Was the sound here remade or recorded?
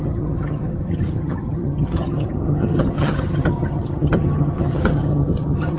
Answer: remade